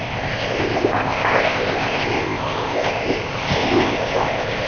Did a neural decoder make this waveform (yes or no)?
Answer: yes